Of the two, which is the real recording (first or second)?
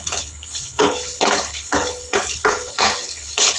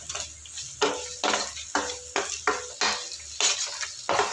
second